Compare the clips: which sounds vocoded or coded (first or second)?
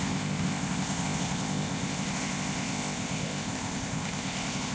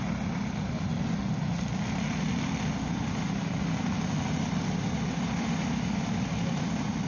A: first